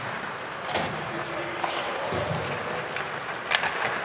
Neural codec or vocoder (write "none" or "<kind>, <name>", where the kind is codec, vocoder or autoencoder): none